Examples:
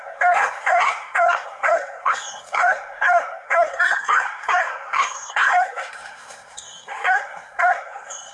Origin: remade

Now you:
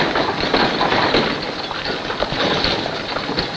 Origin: recorded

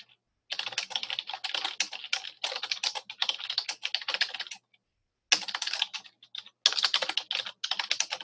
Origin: recorded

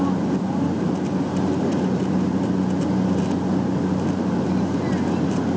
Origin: recorded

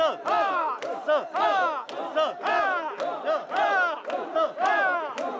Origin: recorded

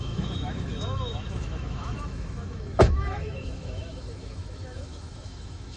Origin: remade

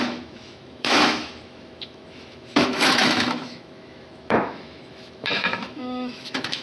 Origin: remade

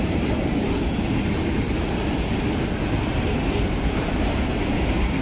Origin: recorded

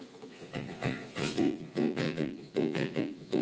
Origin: remade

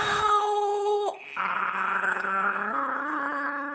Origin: remade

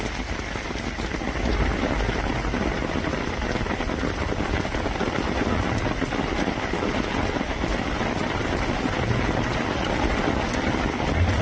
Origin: recorded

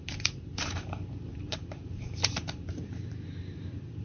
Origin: remade